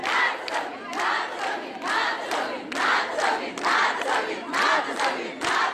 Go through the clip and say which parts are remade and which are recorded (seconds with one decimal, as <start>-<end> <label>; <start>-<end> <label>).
0.0-5.7 recorded